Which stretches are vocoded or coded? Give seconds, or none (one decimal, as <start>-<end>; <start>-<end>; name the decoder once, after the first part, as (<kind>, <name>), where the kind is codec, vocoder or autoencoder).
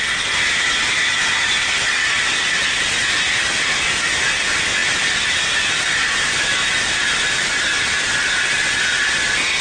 none